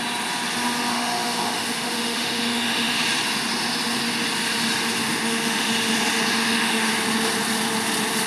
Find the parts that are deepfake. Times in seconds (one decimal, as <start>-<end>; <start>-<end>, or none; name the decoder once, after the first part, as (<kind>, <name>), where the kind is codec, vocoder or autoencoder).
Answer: 0.9-3.0 (autoencoder, DAC-VAE); 5.0-5.7; 6.4-6.9